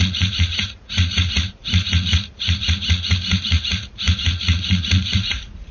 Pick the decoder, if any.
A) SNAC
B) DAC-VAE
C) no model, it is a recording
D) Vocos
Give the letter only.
D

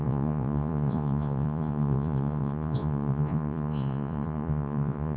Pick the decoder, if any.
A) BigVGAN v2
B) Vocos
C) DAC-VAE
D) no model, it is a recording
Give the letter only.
B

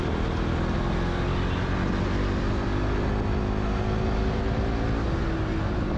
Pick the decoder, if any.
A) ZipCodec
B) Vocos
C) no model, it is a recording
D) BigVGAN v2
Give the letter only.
C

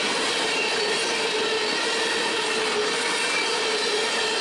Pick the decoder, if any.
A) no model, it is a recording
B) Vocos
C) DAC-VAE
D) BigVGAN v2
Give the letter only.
A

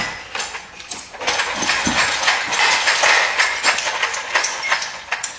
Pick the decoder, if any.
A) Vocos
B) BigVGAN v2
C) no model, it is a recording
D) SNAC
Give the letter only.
A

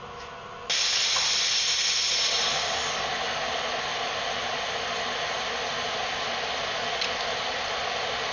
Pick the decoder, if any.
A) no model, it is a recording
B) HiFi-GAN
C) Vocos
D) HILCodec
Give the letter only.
A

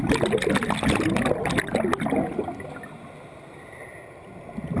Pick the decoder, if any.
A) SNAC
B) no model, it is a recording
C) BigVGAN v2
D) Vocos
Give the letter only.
B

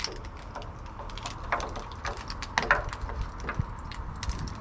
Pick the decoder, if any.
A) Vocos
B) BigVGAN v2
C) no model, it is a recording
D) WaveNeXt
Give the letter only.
C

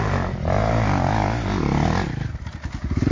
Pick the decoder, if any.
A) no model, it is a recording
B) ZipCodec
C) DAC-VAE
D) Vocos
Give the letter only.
A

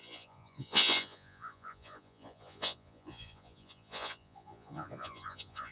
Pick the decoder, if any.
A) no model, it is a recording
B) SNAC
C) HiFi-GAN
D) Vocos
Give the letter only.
D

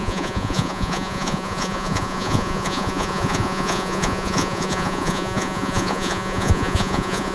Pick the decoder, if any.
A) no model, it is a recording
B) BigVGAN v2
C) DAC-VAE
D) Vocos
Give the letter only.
D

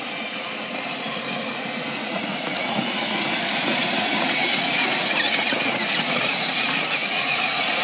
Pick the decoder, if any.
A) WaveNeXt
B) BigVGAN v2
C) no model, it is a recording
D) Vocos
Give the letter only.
D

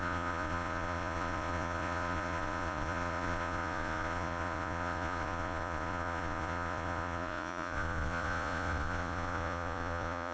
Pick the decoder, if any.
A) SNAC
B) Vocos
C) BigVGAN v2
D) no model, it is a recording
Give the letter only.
B